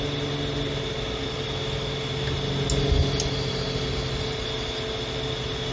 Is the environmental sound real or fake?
real